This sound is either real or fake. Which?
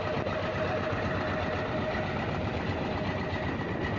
real